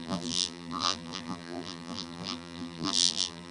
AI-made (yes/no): yes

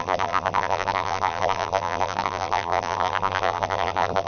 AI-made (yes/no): yes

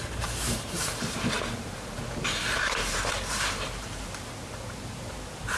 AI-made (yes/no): yes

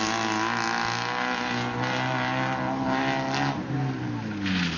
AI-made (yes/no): no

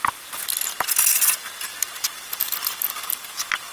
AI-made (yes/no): no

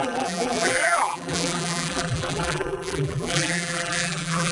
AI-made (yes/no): yes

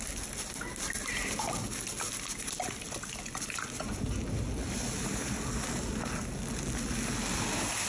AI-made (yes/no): no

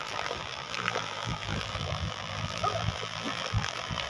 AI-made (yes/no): yes